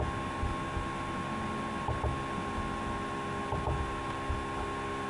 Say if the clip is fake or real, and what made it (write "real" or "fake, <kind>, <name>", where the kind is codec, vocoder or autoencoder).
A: real